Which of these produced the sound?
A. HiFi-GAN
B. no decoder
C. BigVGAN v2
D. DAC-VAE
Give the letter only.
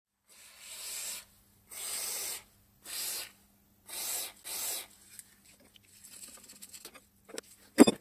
B